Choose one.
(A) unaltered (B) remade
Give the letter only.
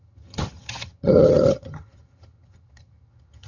B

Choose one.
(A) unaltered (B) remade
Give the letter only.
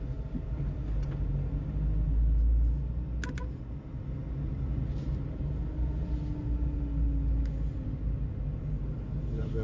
A